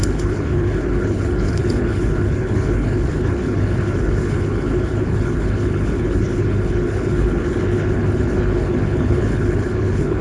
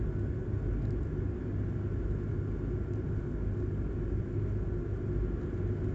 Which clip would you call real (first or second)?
second